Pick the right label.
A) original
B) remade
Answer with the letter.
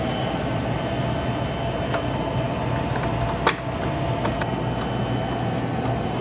A